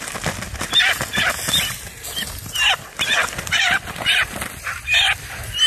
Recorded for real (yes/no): yes